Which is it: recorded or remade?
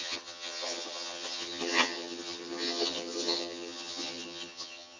remade